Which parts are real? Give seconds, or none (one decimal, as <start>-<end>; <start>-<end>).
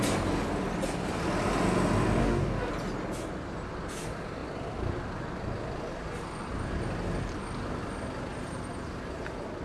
0.0-2.2; 2.7-9.6